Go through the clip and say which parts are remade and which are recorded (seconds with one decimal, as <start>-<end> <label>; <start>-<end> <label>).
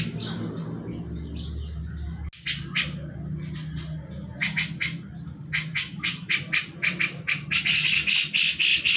0.0-9.0 recorded